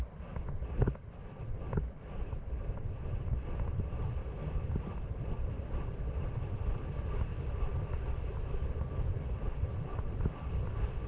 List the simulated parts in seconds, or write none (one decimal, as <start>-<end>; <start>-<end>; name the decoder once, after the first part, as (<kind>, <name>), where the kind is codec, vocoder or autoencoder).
none